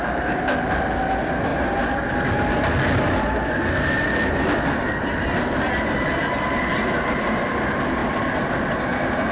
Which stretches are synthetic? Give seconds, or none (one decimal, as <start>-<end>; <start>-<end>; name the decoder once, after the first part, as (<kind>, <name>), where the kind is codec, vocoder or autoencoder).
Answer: 8.0-8.8 (vocoder, BigVGAN v2)